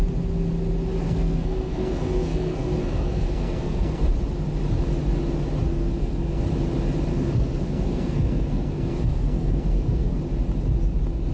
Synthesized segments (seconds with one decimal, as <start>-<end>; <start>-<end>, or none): 1.0-4.0; 5.7-6.4; 7.1-10.2